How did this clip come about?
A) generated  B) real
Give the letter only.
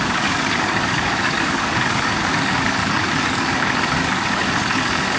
A